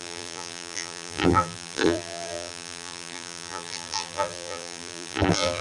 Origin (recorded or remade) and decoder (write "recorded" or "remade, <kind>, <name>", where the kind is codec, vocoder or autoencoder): remade, vocoder, BigVGAN v2